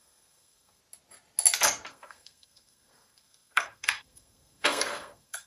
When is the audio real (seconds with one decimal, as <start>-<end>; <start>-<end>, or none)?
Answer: 0.8-1.9